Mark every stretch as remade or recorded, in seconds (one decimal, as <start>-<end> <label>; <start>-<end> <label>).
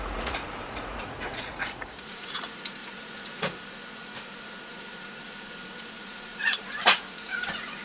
0.0-7.8 remade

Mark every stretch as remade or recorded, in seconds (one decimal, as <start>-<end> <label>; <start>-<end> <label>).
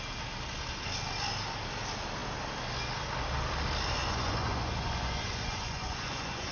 0.0-4.0 recorded; 4.0-6.5 remade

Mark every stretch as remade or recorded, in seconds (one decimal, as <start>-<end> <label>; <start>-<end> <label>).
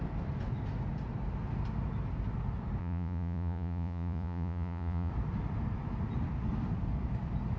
0.0-2.8 recorded; 2.8-5.1 remade; 5.1-7.6 recorded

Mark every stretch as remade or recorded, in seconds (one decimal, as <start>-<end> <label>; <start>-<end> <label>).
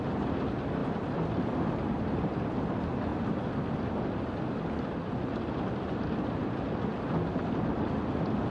0.0-8.5 recorded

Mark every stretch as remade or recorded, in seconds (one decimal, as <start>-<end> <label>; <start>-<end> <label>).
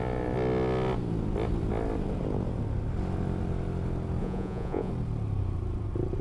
0.0-4.2 recorded; 4.2-4.9 remade; 4.9-6.2 recorded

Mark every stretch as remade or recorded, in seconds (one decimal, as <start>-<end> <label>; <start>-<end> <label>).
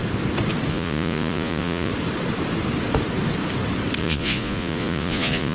0.0-0.7 recorded; 0.7-1.9 remade; 1.9-4.0 recorded; 4.0-5.5 remade